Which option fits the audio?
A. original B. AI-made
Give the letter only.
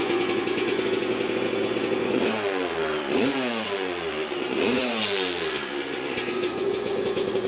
B